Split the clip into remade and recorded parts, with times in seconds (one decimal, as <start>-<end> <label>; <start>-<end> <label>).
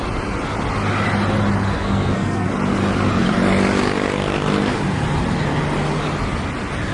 0.0-1.7 recorded; 1.7-2.5 remade; 2.5-6.9 recorded